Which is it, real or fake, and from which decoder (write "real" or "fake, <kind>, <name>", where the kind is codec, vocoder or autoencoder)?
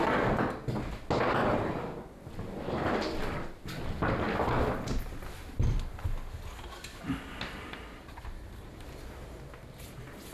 real